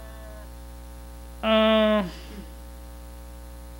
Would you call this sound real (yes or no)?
yes